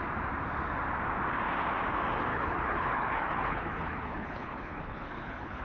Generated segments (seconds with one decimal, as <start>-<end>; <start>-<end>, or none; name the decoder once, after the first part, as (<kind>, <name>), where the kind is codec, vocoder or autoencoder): 2.3-5.6 (codec, HILCodec)